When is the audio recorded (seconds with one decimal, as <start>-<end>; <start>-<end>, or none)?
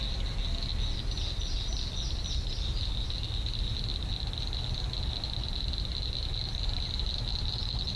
0.0-8.0